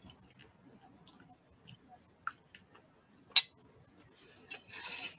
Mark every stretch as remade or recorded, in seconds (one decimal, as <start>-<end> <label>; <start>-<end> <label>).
0.0-5.2 recorded